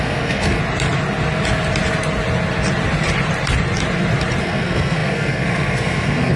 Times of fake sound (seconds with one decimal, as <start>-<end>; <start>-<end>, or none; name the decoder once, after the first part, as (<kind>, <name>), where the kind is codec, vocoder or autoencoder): 0.0-0.6 (codec, SNAC); 4.4-6.4